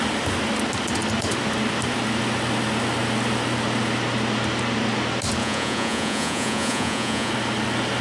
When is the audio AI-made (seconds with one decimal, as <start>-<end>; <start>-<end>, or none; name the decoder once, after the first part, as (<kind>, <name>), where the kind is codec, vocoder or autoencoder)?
5.4-7.3 (vocoder, Vocos)